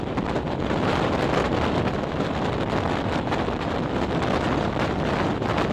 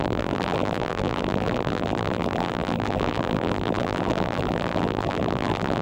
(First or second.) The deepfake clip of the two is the second